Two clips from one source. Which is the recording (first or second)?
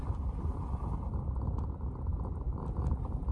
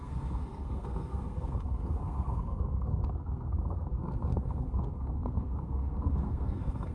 first